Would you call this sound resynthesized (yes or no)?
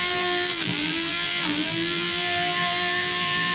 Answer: yes